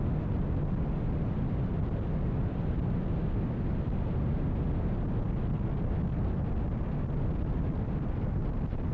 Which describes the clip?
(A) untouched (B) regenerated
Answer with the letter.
A